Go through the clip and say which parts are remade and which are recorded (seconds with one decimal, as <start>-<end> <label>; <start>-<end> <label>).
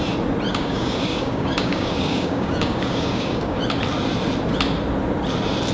0.0-0.5 recorded; 0.5-3.6 remade; 3.6-5.7 recorded